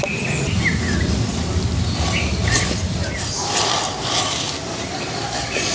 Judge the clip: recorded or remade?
recorded